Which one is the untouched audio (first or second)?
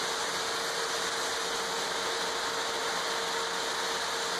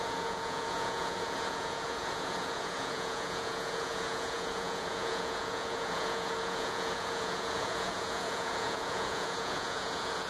first